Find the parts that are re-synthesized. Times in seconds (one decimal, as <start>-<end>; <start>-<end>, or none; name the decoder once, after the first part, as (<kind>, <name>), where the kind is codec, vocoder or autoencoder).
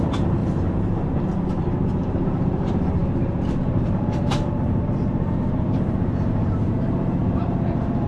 0.0-8.1 (vocoder, BigVGAN v2)